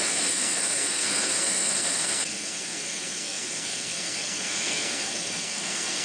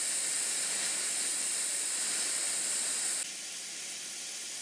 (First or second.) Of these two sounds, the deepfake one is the first